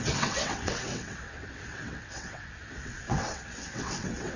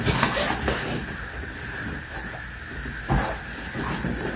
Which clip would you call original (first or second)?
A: second